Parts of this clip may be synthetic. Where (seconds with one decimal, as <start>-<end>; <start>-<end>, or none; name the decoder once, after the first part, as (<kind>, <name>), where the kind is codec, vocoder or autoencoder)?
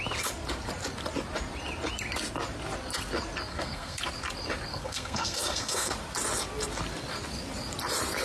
3.5-4.0 (codec, SNAC); 4.7-5.9